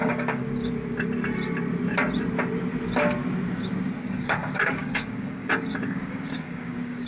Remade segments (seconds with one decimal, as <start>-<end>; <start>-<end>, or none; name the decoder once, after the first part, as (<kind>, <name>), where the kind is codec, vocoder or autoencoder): 0.0-0.4 (codec, DAC); 4.0-7.1